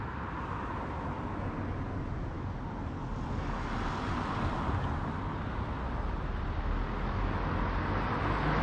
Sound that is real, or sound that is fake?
real